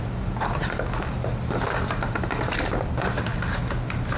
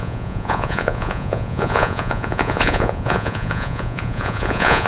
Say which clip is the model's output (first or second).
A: second